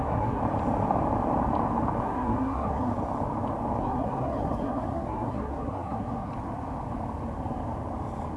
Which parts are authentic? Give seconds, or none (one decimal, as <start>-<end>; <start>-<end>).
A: 0.4-2.0; 2.9-3.8; 6.3-8.4